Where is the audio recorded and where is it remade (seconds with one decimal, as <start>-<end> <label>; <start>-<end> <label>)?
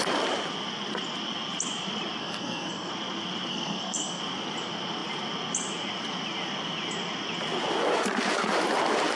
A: 0.0-2.2 recorded; 2.2-2.9 remade; 2.9-3.5 recorded; 3.5-4.2 remade; 4.2-9.2 recorded